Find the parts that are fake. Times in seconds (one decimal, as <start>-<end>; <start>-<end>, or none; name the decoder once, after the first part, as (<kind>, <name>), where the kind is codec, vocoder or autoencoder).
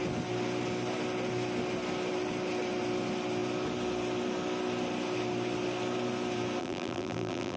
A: 6.6-7.6 (vocoder, BigVGAN v2)